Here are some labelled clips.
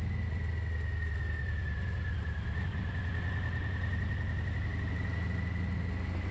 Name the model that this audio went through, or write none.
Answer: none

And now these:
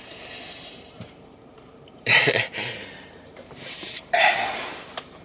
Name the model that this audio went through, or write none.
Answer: vocoder, BigVGAN v2